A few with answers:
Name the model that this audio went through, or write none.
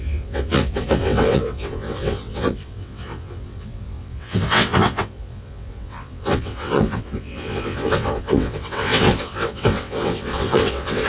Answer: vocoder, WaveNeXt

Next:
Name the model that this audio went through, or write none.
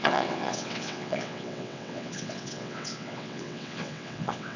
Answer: vocoder, WaveNeXt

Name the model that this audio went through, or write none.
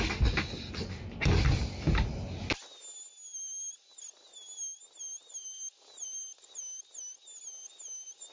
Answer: none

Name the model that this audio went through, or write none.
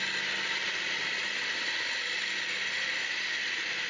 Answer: none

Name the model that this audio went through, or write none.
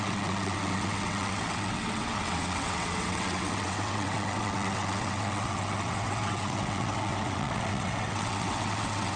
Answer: vocoder, WaveNeXt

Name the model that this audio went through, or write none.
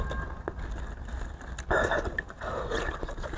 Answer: none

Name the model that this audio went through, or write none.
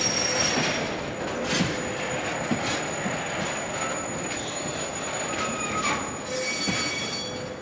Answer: none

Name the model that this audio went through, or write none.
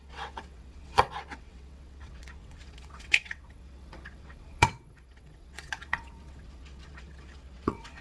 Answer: vocoder, WaveNeXt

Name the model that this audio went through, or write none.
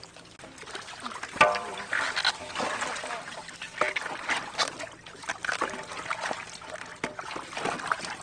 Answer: none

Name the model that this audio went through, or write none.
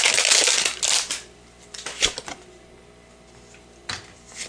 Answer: none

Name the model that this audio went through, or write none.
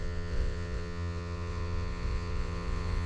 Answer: vocoder, WaveNeXt